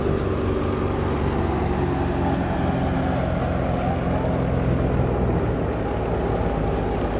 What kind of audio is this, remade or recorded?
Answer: recorded